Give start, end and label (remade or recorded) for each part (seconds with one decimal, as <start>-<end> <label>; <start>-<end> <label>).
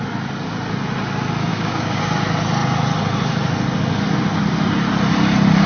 0.0-1.5 recorded; 1.5-2.0 remade; 2.0-5.7 recorded